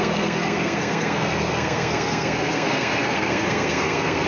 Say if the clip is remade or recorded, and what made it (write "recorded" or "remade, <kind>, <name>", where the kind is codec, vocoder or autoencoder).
remade, codec, SNAC